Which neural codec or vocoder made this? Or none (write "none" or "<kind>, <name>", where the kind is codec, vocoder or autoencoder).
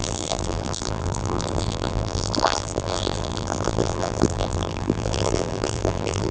vocoder, BigVGAN v2